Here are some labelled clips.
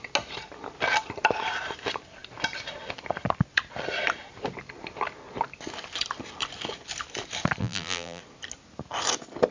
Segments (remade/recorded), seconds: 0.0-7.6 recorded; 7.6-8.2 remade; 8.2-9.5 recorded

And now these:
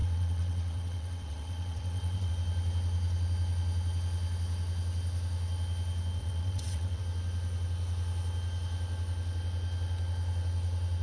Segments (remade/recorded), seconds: 0.0-2.3 remade; 2.3-6.2 recorded; 6.2-7.0 remade; 7.0-11.0 recorded

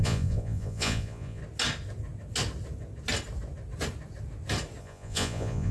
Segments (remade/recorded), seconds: 0.0-1.4 remade; 1.4-4.8 recorded; 4.8-5.7 remade

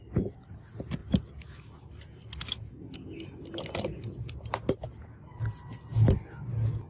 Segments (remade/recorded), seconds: 0.0-6.9 recorded

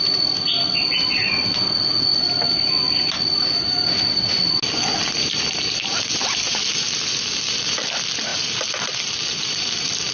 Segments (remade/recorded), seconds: 0.0-10.1 recorded

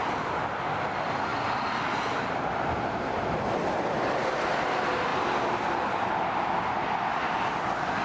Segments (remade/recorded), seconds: 0.0-8.0 recorded

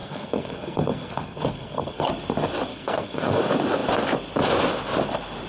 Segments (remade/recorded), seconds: 0.0-2.1 remade; 2.1-2.7 recorded; 2.7-3.4 remade; 3.4-5.5 recorded